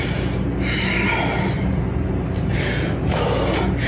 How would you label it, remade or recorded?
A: recorded